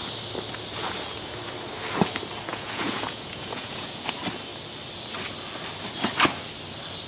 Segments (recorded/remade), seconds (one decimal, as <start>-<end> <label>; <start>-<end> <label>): 0.0-2.5 recorded; 2.5-4.0 remade; 4.0-7.1 recorded